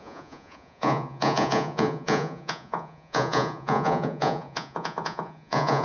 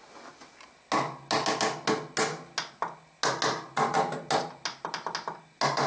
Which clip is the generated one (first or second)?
first